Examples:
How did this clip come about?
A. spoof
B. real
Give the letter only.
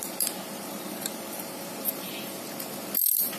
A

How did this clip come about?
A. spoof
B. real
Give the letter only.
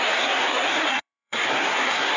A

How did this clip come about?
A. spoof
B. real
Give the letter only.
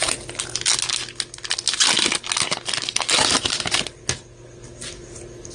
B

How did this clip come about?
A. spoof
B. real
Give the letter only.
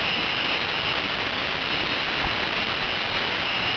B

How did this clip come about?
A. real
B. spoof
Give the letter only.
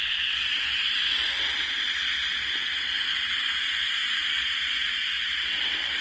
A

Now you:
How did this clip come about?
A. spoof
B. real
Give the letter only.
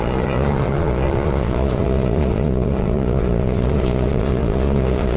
A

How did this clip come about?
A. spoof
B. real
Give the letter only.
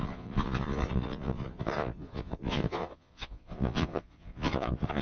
A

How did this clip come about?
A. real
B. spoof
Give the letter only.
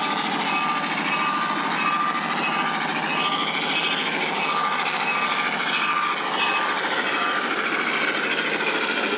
A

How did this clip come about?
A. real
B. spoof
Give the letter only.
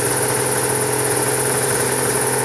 A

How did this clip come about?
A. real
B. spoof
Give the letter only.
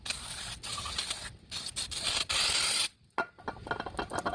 A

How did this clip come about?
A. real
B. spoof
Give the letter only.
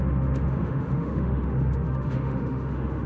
B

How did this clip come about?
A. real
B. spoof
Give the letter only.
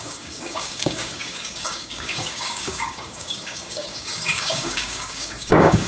B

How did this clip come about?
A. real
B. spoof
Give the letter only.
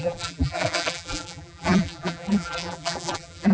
B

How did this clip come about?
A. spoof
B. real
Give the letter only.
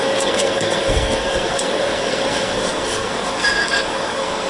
A